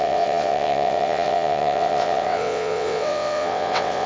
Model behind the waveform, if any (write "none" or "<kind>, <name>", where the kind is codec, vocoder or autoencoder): vocoder, WaveNeXt